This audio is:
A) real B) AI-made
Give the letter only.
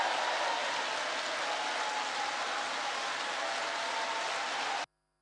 A